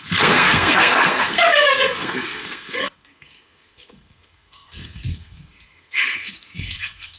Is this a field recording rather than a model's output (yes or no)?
no